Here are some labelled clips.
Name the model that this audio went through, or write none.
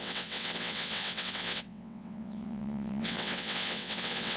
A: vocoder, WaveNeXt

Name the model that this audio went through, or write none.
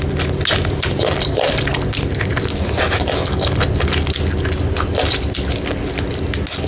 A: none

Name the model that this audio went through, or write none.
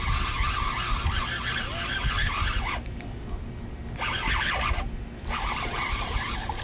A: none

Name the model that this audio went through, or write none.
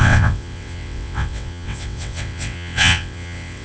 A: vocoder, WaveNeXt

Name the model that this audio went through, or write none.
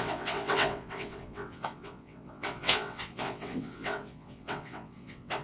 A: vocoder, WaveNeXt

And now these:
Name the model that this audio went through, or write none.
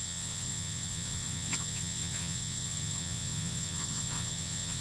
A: vocoder, WaveNeXt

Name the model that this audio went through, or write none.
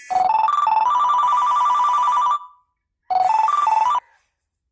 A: none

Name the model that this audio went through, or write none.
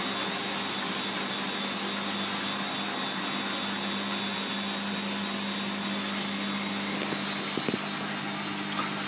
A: none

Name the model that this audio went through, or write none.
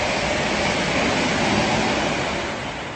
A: none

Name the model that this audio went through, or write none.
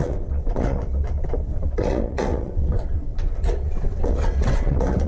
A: vocoder, WaveNeXt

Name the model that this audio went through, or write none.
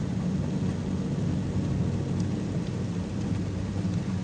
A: none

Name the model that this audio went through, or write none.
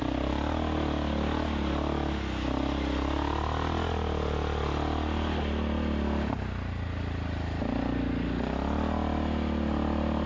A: none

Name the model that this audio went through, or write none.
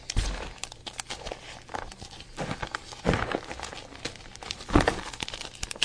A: none